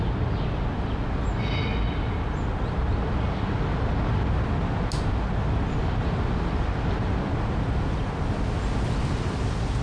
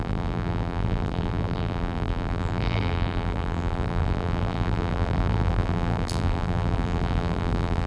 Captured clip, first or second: first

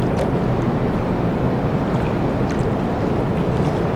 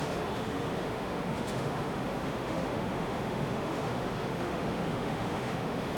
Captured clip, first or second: first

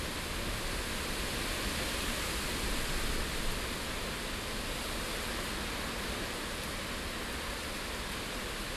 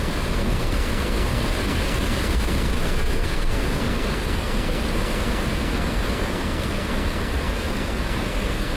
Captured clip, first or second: first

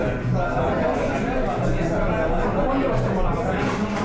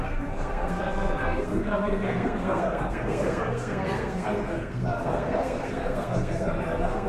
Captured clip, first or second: first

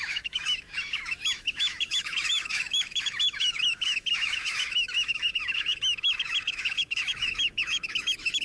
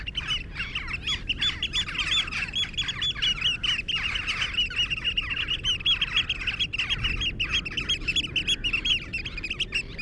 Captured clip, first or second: second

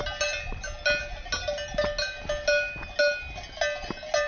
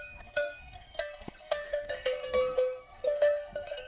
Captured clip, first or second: first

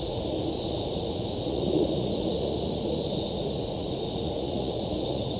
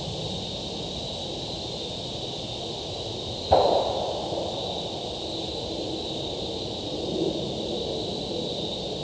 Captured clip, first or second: second